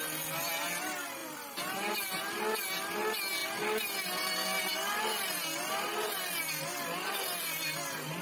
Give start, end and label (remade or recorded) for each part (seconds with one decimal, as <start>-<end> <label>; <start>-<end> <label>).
0.0-1.2 recorded; 1.2-1.9 remade; 1.9-8.2 recorded